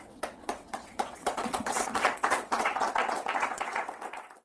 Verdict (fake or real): fake